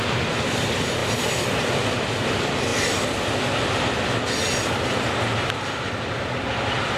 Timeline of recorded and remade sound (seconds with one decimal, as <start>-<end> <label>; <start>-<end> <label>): 0.0-1.0 remade; 1.0-2.3 recorded; 2.3-2.7 remade; 2.7-6.5 recorded; 6.5-7.0 remade

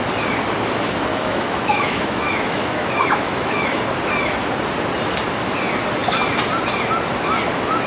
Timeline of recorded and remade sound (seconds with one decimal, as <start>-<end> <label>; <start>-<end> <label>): 0.0-1.1 recorded; 1.1-3.8 remade; 3.8-7.9 recorded